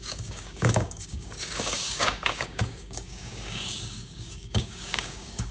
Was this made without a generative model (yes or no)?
no